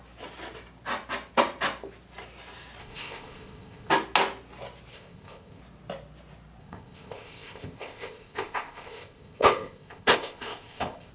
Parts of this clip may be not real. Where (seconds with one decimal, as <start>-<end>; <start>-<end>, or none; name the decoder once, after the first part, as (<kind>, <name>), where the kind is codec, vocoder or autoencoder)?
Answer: 2.8-3.9 (codec, ZipCodec); 4.9-5.6; 6.6-11.1